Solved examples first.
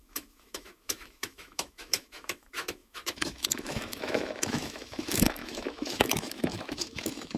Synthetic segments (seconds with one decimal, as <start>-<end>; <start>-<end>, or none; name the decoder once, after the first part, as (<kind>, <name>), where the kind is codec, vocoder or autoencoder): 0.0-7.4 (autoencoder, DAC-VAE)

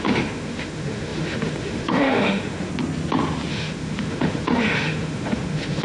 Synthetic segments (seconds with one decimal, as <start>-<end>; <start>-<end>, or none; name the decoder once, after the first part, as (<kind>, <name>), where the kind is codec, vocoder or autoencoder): 0.0-2.7 (autoencoder, DAC-VAE); 3.5-5.8

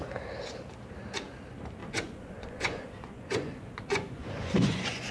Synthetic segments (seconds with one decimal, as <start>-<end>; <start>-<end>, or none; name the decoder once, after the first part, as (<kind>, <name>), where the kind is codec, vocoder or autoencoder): 1.8-5.1 (vocoder, Vocos)

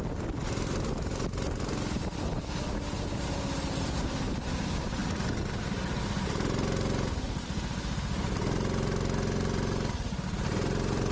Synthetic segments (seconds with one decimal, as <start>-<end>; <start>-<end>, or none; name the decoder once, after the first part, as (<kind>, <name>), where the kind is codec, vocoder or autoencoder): none

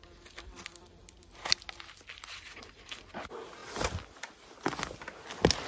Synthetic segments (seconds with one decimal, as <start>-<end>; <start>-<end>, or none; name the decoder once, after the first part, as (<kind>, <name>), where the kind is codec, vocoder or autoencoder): none

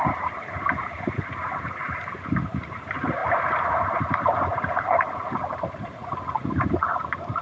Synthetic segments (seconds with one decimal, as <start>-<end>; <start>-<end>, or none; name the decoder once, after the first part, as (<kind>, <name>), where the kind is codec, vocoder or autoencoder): 0.0-4.5 (vocoder, BigVGAN v2); 5.2-7.4